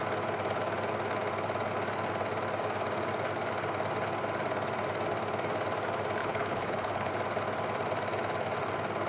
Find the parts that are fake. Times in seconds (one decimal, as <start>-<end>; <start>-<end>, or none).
6.2-7.1